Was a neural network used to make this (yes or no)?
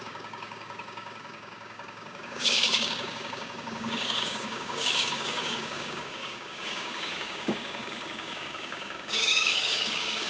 yes